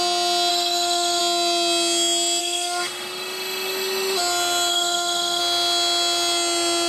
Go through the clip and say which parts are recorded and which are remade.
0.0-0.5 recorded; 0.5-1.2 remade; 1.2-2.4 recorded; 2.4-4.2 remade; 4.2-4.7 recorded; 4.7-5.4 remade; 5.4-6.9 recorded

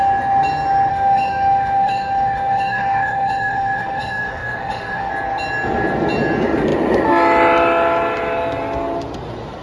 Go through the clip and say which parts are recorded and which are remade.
0.0-0.9 recorded; 0.9-5.1 remade; 5.1-9.6 recorded